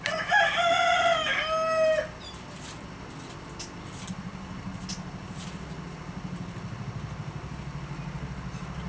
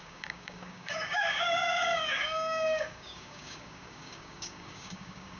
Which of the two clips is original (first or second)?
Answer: first